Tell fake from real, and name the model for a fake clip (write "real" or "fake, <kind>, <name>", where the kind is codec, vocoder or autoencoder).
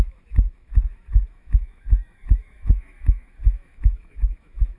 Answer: fake, autoencoder, DAC-VAE